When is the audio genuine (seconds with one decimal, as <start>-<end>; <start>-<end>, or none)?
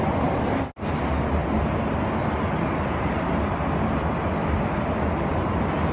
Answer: 0.0-5.9